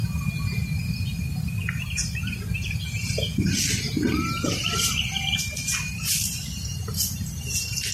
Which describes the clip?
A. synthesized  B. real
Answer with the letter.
B